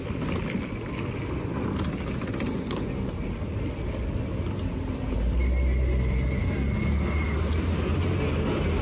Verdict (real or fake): real